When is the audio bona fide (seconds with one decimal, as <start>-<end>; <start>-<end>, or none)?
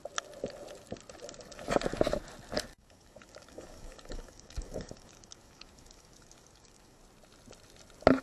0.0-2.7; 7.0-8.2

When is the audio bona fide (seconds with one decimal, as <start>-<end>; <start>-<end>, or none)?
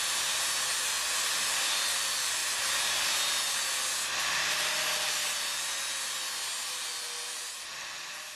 2.4-4.2; 5.2-6.5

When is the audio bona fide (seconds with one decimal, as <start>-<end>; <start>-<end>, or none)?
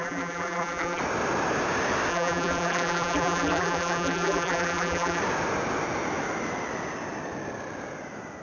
1.0-2.1; 5.2-8.4